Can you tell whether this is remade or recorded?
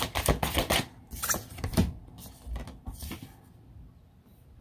recorded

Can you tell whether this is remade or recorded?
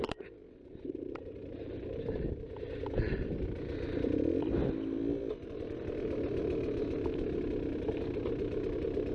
remade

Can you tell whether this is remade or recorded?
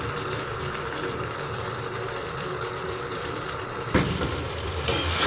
remade